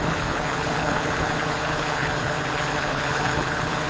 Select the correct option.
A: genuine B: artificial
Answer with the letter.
B